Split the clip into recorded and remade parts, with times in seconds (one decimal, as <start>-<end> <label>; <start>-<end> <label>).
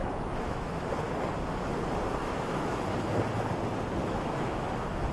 0.0-0.8 remade; 0.8-2.2 recorded; 2.2-2.8 remade; 2.8-4.0 recorded; 4.0-5.1 remade